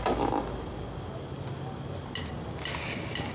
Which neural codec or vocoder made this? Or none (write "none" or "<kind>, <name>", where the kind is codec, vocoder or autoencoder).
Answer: none